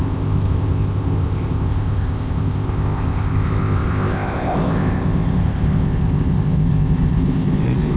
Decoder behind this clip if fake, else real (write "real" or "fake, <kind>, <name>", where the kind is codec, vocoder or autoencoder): fake, codec, ZipCodec